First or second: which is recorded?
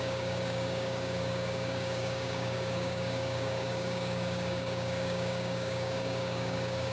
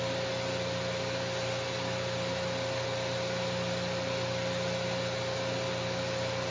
second